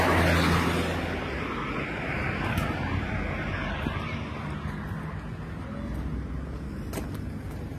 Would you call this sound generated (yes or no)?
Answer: no